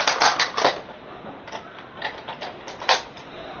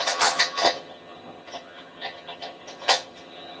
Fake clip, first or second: second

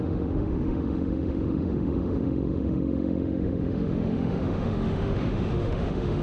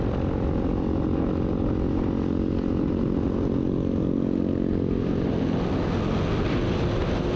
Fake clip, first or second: first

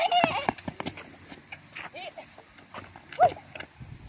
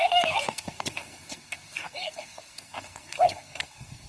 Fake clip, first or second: second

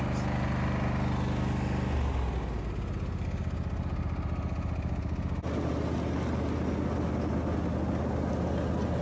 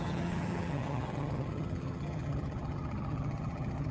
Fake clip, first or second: second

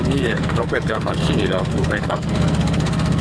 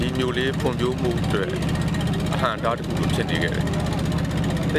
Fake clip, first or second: first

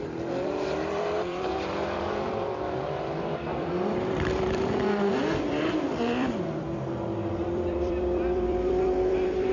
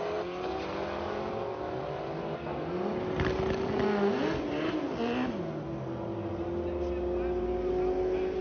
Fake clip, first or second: first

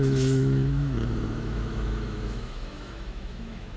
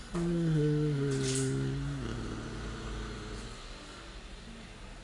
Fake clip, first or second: first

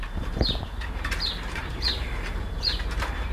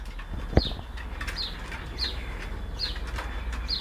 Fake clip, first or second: first